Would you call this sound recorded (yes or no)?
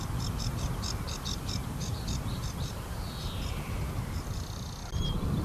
no